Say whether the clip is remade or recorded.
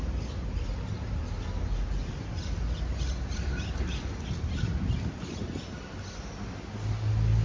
recorded